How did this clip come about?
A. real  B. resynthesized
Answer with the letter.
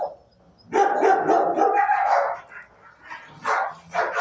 A